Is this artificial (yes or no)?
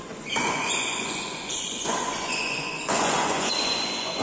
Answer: yes